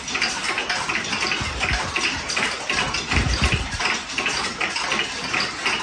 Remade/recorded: recorded